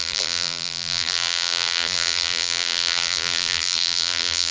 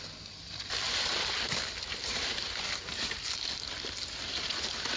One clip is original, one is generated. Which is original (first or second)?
second